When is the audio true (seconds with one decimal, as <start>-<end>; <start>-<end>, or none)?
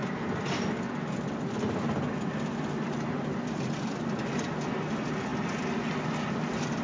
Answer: 0.0-6.8